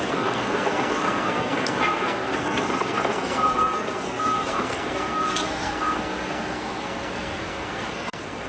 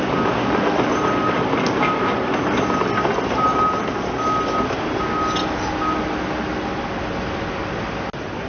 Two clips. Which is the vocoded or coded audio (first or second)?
first